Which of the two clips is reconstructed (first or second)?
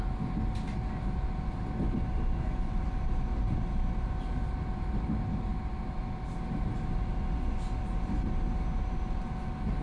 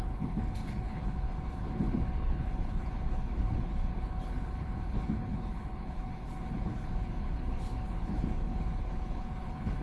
second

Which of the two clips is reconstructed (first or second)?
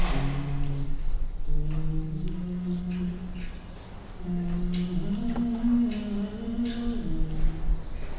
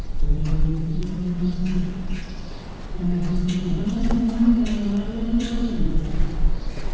second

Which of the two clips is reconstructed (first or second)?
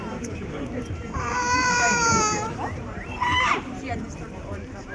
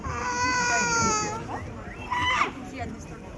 first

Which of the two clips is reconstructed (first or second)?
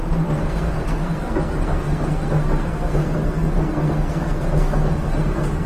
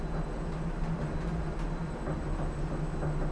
first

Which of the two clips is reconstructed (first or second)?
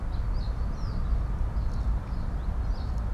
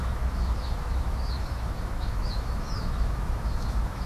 second